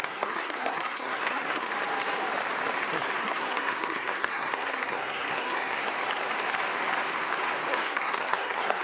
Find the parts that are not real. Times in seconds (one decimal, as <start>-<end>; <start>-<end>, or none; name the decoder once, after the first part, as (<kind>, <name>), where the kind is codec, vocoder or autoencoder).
0.0-1.7 (codec, SNAC); 3.2-5.9; 7.7-8.8